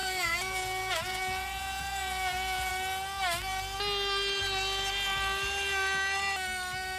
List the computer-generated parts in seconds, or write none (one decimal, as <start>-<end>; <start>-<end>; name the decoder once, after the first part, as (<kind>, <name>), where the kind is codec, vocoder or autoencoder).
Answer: 0.0-2.7 (vocoder, Vocos)